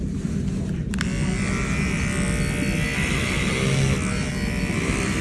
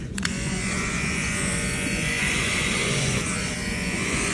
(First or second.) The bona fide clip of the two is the first